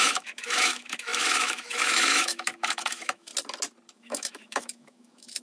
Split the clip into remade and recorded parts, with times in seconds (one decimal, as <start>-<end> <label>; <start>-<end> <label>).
0.0-3.3 remade; 3.3-3.9 recorded; 3.9-5.4 remade